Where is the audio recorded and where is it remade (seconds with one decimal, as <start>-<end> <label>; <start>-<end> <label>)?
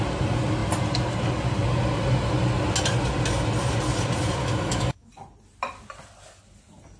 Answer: 0.0-4.4 recorded; 4.4-5.1 remade; 5.1-7.0 recorded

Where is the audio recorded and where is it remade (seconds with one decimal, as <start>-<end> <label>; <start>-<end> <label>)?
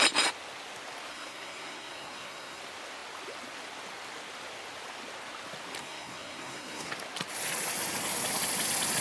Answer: 0.0-1.1 recorded; 1.1-2.6 remade; 2.6-5.8 recorded; 5.8-6.9 remade; 6.9-9.0 recorded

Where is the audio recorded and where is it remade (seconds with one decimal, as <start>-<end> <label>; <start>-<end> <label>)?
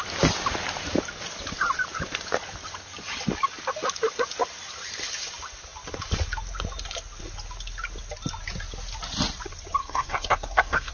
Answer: 0.0-9.8 recorded; 9.8-10.9 remade